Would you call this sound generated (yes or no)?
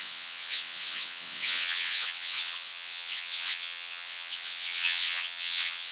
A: yes